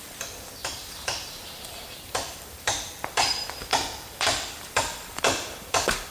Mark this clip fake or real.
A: fake